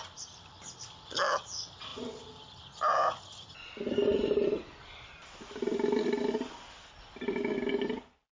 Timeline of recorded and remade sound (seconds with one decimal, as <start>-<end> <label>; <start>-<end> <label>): 0.0-8.4 recorded